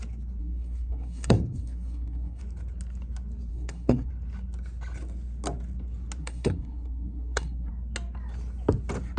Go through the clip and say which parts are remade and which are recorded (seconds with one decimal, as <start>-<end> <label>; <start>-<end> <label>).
0.0-0.4 recorded; 0.4-2.4 remade; 2.4-3.5 recorded; 3.5-4.1 remade; 4.1-6.2 recorded; 6.2-7.7 remade; 7.7-9.2 recorded